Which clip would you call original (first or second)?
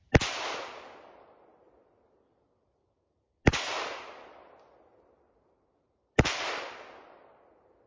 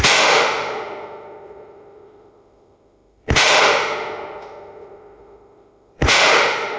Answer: first